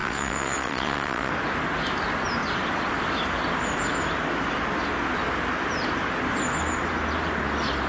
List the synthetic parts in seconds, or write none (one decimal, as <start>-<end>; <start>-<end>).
0.0-1.3